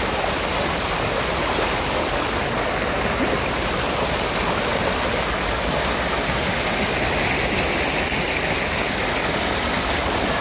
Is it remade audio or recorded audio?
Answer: recorded